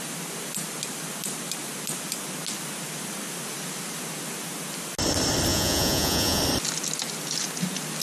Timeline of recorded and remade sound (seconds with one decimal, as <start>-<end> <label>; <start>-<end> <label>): 0.0-5.5 recorded; 5.5-6.4 remade; 6.4-8.0 recorded